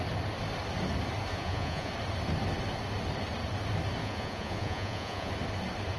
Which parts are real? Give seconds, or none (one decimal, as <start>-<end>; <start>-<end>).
0.0-1.3; 1.9-4.0; 5.3-6.0